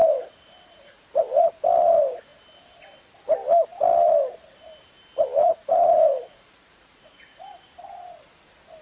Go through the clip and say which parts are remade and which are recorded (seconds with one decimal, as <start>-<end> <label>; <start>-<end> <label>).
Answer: 0.0-1.5 remade; 1.5-5.4 recorded; 5.4-7.7 remade; 7.7-8.8 recorded